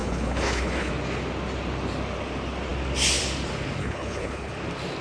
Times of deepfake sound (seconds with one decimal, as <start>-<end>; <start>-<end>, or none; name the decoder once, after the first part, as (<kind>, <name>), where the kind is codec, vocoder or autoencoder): 0.0-0.9 (codec, HILCodec); 3.8-4.5